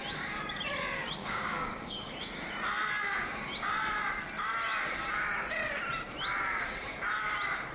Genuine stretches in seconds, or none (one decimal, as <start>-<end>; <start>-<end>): 0.0-1.2; 2.1-7.7